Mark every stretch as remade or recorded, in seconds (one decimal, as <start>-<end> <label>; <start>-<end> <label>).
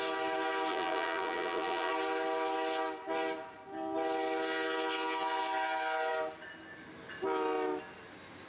0.0-0.7 recorded; 0.7-1.9 remade; 1.9-8.5 recorded